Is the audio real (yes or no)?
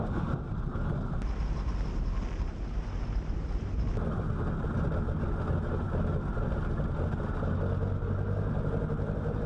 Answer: yes